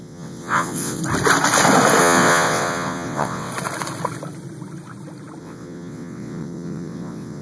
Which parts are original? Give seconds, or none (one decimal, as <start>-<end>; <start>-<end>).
1.0-2.0; 3.5-5.4